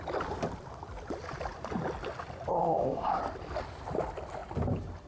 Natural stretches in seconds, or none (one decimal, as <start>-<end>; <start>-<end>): 0.0-2.6; 3.2-5.1

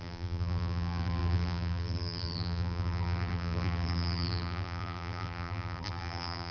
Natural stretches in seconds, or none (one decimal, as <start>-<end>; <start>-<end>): none

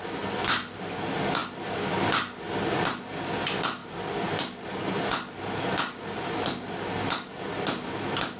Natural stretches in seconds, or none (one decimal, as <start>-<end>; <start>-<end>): 0.0-8.4